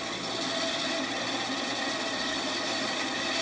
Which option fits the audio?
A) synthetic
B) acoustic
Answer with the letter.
B